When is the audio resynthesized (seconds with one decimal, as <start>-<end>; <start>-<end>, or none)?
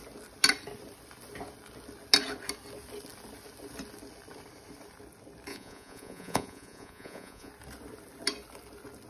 5.5-7.5